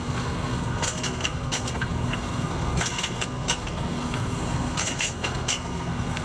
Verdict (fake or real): fake